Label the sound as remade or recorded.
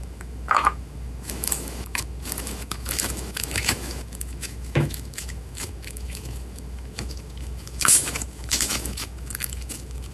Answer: remade